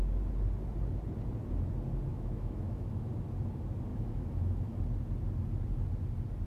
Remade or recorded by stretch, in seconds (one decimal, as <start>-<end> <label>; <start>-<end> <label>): 0.0-2.1 recorded; 2.1-3.1 remade; 3.1-3.9 recorded; 3.9-4.8 remade; 4.8-6.5 recorded